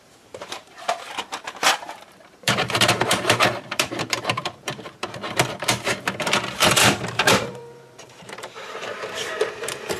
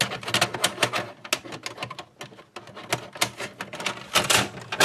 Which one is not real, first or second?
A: first